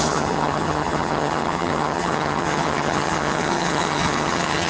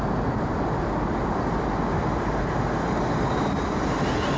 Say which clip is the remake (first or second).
first